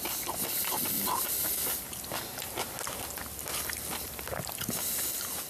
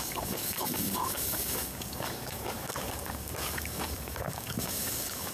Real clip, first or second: first